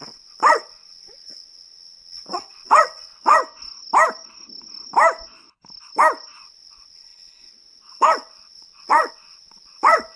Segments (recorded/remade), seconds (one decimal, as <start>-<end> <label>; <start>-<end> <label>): 0.0-3.4 remade; 3.4-6.4 recorded; 6.4-10.2 remade